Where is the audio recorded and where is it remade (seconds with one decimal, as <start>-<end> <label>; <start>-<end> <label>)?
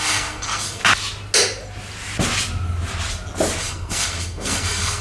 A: 0.0-0.8 remade; 0.8-3.6 recorded; 3.6-5.0 remade